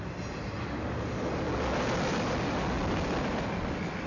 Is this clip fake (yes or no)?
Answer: no